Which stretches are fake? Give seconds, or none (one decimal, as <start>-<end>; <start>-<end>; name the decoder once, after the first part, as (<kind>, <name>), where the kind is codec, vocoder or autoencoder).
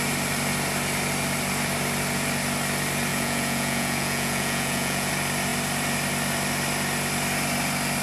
3.1-5.1 (vocoder, Vocos)